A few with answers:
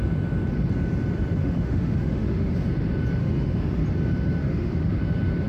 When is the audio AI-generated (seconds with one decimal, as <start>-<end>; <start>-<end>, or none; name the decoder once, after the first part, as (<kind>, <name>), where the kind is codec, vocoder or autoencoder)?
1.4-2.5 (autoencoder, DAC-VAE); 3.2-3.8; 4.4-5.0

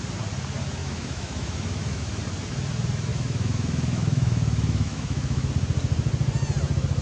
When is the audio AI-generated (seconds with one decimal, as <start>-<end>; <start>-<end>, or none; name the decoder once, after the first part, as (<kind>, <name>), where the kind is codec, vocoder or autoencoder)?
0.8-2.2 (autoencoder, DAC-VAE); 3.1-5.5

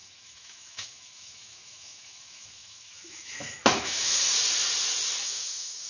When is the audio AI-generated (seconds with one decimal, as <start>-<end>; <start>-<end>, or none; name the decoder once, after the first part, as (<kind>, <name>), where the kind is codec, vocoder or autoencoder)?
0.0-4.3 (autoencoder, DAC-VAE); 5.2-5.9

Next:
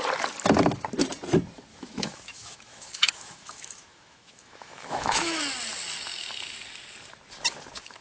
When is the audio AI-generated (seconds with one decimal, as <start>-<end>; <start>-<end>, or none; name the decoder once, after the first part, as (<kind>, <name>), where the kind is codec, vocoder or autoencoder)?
1.7-5.4 (autoencoder, DAC-VAE)

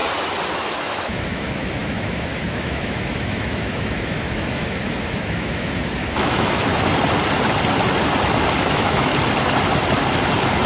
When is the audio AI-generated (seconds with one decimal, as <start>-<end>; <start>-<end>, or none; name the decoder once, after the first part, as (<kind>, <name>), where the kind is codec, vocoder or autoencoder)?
0.5-6.7 (autoencoder, DAC-VAE); 8.7-9.1

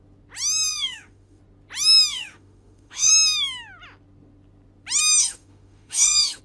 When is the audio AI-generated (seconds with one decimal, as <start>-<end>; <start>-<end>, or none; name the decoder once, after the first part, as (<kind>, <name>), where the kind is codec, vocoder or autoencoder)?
0.7-1.4 (autoencoder, DAC-VAE); 2.1-3.1; 5.2-6.4